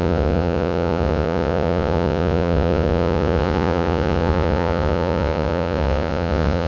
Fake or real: fake